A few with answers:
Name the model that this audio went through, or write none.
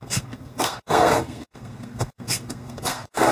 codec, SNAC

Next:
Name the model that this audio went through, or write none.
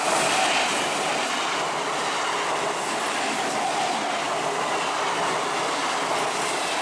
none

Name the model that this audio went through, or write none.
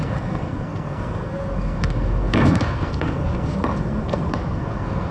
codec, SNAC